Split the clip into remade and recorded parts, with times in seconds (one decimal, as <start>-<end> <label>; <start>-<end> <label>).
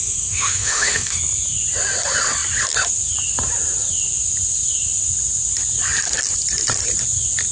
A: 0.0-1.2 remade; 1.2-7.5 recorded